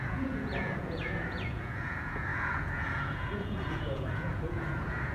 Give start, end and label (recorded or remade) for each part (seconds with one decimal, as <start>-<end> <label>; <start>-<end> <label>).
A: 0.0-5.1 remade